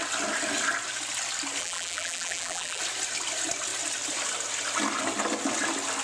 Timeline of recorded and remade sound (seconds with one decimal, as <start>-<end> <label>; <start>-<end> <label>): 0.0-1.6 recorded; 1.6-2.8 remade; 2.8-6.0 recorded